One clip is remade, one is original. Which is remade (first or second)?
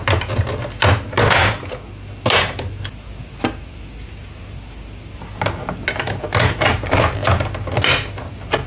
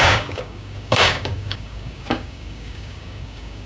second